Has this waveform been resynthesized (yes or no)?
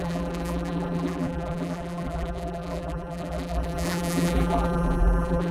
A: yes